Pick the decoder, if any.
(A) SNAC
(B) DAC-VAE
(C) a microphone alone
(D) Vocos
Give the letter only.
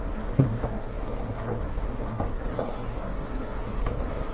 A